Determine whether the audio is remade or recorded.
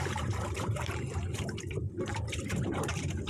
remade